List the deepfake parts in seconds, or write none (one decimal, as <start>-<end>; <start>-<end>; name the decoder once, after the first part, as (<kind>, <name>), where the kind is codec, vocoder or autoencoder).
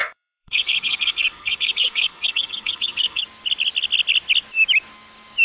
0.0-3.2 (codec, SNAC)